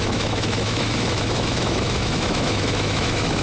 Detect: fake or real fake